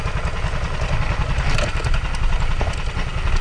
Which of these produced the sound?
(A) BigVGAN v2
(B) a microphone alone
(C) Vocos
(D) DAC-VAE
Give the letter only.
B